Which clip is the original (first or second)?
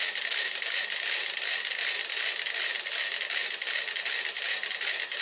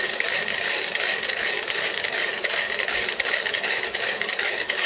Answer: first